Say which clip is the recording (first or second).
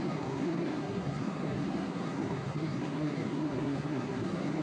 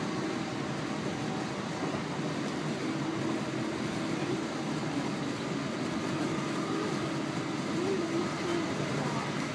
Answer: second